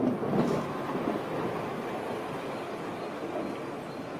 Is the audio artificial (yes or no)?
no